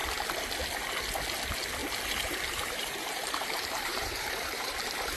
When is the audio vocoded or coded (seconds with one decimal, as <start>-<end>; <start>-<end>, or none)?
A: 1.8-5.2